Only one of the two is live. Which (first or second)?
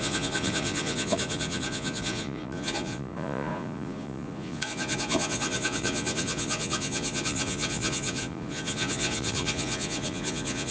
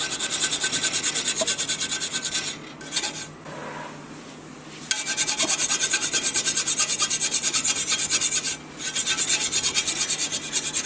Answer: second